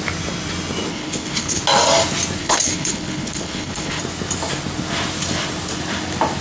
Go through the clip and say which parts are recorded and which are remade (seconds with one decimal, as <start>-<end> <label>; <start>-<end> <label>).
0.0-0.9 recorded; 0.9-1.6 remade; 1.6-2.4 recorded; 2.4-4.0 remade; 4.0-6.4 recorded